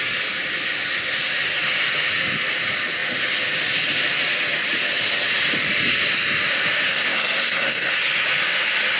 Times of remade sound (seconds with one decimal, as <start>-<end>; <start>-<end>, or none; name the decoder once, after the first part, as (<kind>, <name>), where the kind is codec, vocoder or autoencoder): 6.9-7.9 (codec, SNAC)